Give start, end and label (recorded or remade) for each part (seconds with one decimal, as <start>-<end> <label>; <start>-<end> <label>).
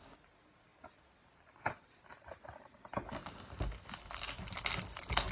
0.0-5.3 recorded